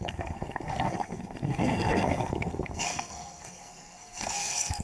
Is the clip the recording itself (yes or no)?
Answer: no